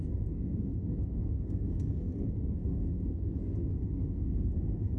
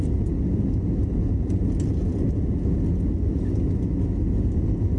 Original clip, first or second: second